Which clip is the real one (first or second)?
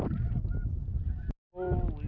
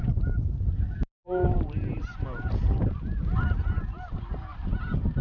first